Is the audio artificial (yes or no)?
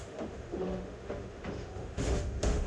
yes